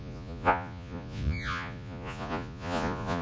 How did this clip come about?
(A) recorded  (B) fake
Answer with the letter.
B